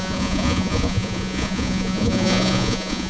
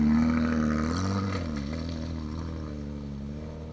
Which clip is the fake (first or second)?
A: first